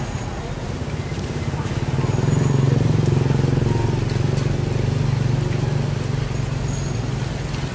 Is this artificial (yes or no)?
no